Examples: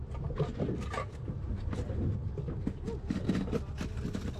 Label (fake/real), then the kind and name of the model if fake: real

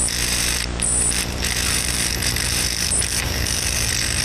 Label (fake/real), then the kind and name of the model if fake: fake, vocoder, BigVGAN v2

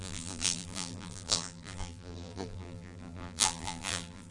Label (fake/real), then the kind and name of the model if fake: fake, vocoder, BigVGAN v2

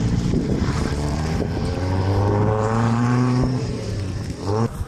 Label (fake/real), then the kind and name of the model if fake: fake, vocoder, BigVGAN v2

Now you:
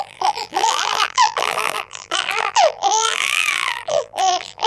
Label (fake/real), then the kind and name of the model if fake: fake, vocoder, BigVGAN v2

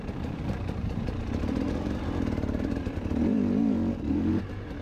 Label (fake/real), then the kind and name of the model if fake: fake, vocoder, BigVGAN v2